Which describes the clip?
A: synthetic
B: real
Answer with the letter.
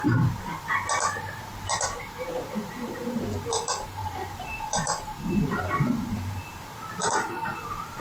A